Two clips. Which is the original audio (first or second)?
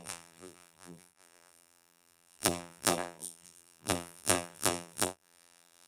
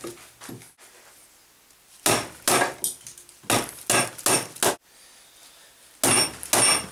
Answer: second